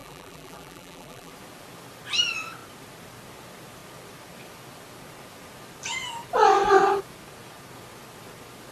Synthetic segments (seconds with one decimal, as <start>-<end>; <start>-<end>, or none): 0.0-1.3